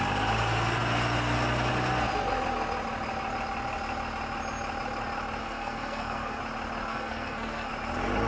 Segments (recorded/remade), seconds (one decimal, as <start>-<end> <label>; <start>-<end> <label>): 0.0-5.4 recorded; 5.4-6.4 remade; 6.4-6.9 recorded; 6.9-7.7 remade; 7.7-8.3 recorded